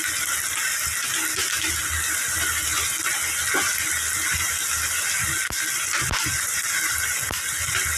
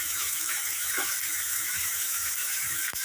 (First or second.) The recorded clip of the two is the first